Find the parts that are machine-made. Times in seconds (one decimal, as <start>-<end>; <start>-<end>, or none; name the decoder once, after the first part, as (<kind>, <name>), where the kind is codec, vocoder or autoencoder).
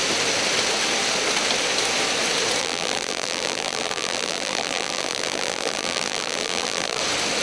2.6-7.0 (vocoder, BigVGAN v2)